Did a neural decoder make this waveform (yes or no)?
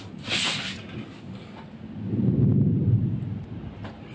no